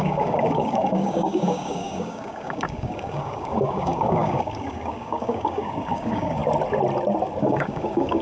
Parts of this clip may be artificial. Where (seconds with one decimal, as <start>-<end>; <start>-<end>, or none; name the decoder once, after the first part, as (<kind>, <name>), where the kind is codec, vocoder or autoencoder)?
0.0-6.4 (codec, DAC); 7.4-8.2